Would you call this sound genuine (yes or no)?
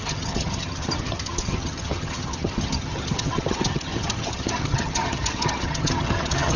no